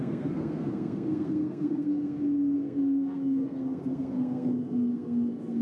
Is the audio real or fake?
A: fake